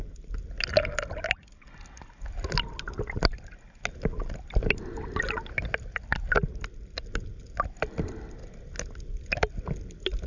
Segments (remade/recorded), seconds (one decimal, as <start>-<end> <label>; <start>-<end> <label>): 0.0-10.3 recorded